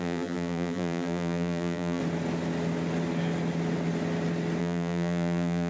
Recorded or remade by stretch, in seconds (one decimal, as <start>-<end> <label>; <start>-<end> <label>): 0.0-2.0 remade; 2.0-4.6 recorded; 4.6-5.7 remade